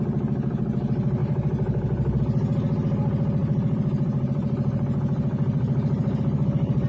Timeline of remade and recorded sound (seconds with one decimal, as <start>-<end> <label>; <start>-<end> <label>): 0.0-1.2 recorded; 1.2-2.2 remade; 2.2-3.4 recorded; 3.4-6.2 remade; 6.2-6.9 recorded